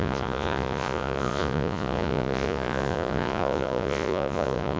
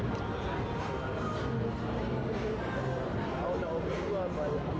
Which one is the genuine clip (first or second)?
second